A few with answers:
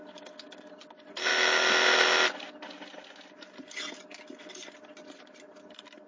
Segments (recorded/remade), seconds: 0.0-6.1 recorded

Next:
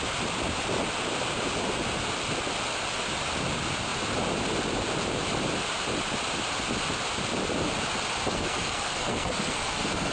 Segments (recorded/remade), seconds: 0.0-8.3 recorded; 8.3-10.1 remade

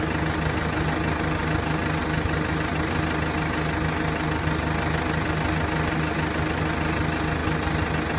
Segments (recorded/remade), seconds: 0.0-8.2 recorded

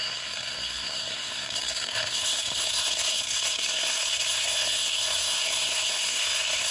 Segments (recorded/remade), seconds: 0.0-6.7 remade

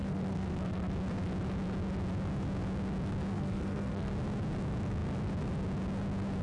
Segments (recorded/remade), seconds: 0.0-0.9 remade; 0.9-3.3 recorded; 3.3-4.1 remade; 4.1-6.4 recorded

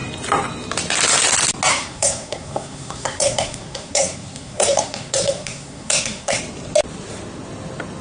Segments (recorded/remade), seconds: 0.0-1.7 recorded; 1.7-6.4 remade; 6.4-8.0 recorded

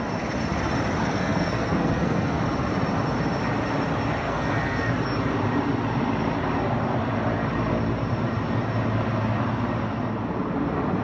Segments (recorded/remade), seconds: 0.0-1.0 recorded; 1.0-2.4 remade; 2.4-4.2 recorded; 4.2-4.9 remade; 4.9-11.0 recorded

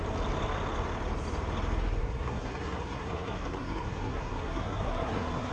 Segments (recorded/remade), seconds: 0.0-2.0 recorded; 2.0-5.5 remade